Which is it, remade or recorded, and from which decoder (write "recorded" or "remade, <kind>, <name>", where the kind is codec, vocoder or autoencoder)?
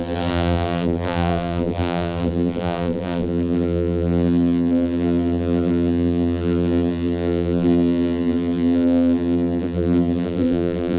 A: remade, vocoder, BigVGAN v2